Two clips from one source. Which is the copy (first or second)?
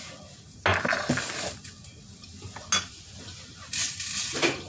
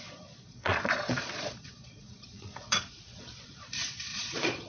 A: second